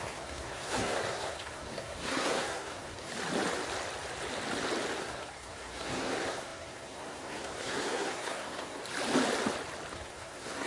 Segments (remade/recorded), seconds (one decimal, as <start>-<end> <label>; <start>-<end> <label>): 0.0-3.1 remade; 3.1-5.0 recorded; 5.0-8.8 remade; 8.8-9.9 recorded; 9.9-10.7 remade